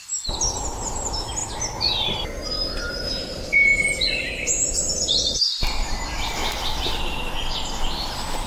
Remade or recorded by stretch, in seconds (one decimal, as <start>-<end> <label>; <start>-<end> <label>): 0.0-1.4 remade; 1.4-2.9 recorded; 2.9-3.7 remade; 3.7-5.6 recorded; 5.6-6.4 remade; 6.4-8.0 recorded; 8.0-8.5 remade